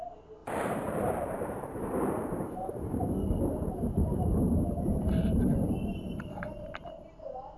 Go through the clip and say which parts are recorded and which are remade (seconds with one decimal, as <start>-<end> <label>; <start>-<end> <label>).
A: 0.0-0.4 recorded; 0.4-3.1 remade; 3.1-4.0 recorded; 4.0-6.7 remade; 6.7-7.6 recorded